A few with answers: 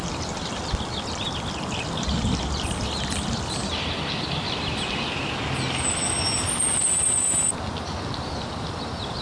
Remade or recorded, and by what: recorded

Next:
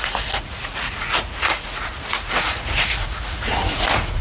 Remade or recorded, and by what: remade, vocoder, Vocos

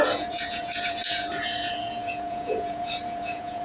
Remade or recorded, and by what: remade, vocoder, Vocos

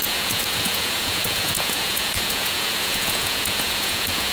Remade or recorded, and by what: remade, vocoder, Vocos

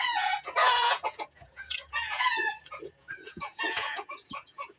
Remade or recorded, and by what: remade, vocoder, Vocos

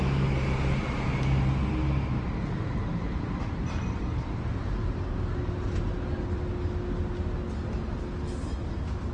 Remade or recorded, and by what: recorded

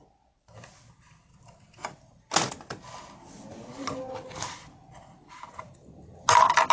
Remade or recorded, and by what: recorded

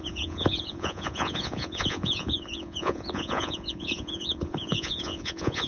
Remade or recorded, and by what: remade, vocoder, Vocos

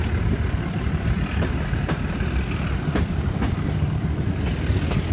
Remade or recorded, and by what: recorded